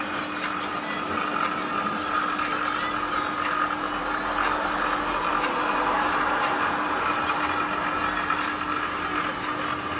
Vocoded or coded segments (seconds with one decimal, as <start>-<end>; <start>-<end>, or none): none